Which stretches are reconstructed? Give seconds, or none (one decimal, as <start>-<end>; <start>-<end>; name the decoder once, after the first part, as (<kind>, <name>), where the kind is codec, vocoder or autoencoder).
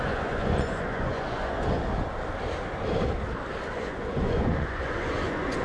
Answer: 0.0-1.8 (vocoder, Vocos); 3.7-5.6